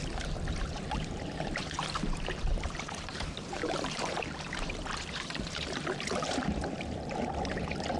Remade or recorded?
remade